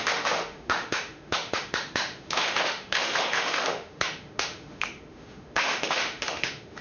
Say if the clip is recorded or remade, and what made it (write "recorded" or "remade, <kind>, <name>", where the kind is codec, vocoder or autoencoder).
remade, autoencoder, DAC-VAE